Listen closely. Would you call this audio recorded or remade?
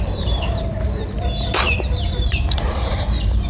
remade